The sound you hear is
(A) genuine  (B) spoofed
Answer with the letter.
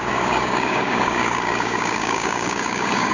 B